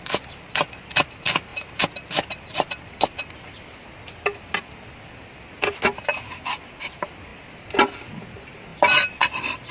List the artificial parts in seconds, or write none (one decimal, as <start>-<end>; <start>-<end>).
none